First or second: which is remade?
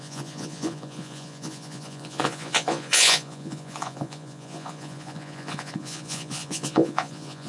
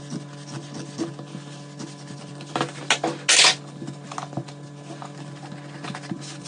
first